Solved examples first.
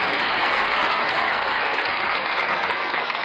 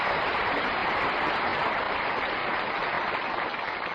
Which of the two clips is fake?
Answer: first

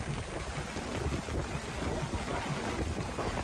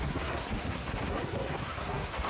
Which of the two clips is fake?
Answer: second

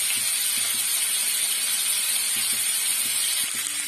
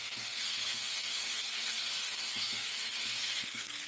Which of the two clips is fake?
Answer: second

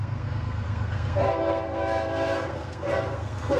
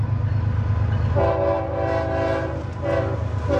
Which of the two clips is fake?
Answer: first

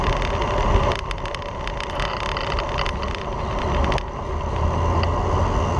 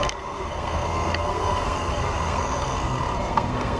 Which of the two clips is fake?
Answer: second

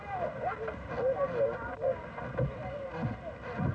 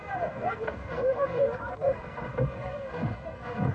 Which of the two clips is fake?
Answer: second